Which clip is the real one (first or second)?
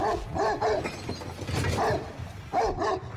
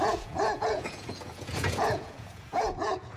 first